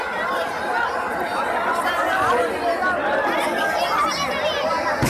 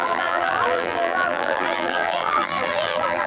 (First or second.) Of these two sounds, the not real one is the second